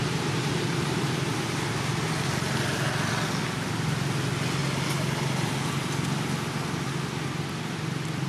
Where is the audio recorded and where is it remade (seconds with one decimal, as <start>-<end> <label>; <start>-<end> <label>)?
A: 0.0-1.2 remade; 1.2-8.3 recorded